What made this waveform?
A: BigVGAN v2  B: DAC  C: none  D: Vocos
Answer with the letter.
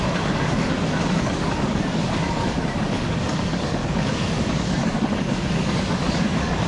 B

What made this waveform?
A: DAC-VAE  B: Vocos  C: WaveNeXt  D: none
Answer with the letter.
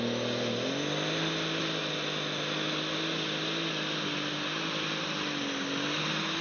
D